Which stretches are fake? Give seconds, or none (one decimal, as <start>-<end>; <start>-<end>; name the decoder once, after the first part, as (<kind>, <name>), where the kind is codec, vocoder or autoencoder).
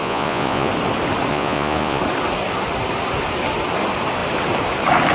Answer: 0.0-0.7 (vocoder, Vocos); 1.3-2.0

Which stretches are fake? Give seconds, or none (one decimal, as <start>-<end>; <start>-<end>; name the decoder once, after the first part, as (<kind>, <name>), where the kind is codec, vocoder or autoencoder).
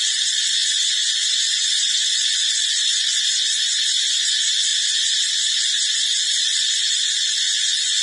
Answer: 0.0-4.7 (vocoder, Vocos); 5.9-8.0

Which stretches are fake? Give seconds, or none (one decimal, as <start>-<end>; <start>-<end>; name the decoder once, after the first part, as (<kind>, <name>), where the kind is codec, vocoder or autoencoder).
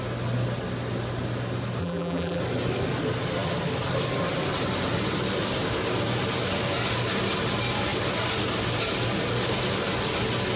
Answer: 1.8-2.4 (vocoder, BigVGAN v2)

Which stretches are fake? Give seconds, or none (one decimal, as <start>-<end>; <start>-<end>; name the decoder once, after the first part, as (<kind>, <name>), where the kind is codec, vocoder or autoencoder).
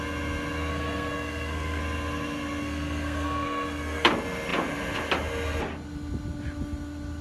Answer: 0.7-1.8 (codec, SNAC); 2.6-4.1